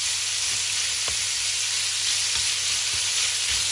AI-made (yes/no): no